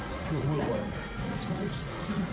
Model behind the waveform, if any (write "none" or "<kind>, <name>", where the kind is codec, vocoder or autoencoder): vocoder, Vocos